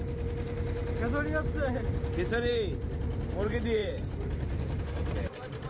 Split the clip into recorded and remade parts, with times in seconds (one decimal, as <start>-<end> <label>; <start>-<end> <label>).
0.0-3.8 recorded; 3.8-4.8 remade; 4.8-5.7 recorded